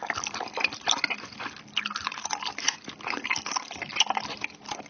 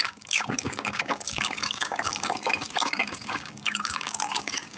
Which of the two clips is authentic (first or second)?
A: first